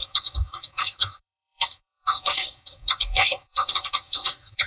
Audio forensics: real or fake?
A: fake